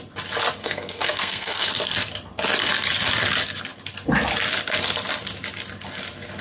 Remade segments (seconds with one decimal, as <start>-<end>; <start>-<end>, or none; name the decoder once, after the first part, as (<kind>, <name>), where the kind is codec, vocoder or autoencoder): 0.6-1.7 (codec, SNAC)